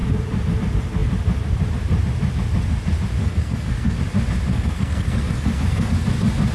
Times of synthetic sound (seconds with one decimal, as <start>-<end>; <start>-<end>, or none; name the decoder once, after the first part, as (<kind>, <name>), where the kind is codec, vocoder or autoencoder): 3.2-4.0 (codec, SNAC); 4.5-5.9